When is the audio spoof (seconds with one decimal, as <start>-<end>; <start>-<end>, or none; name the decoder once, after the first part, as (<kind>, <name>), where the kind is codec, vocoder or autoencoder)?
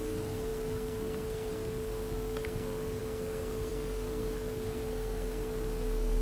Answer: 0.0-6.2 (codec, SNAC)